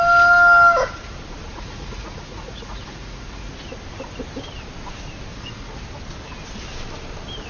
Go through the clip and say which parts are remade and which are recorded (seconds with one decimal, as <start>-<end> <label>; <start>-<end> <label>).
0.0-1.5 recorded; 1.5-3.5 remade; 3.5-5.3 recorded; 5.3-5.8 remade; 5.8-7.5 recorded